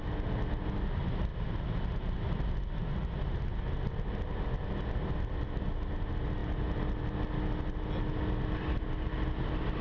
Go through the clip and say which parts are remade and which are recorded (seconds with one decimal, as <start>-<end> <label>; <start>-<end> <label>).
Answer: 0.0-9.8 recorded